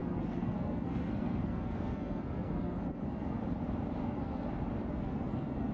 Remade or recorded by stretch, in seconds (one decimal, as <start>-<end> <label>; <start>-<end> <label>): 0.0-3.4 remade; 3.4-4.0 recorded; 4.0-4.5 remade; 4.5-4.9 recorded; 4.9-5.7 remade